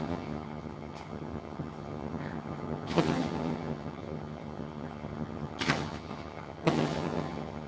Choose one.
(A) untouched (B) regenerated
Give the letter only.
B